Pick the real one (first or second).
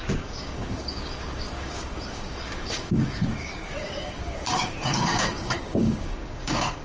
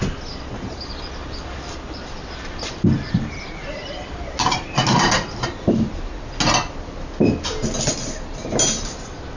second